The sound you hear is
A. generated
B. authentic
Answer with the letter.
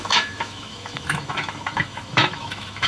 A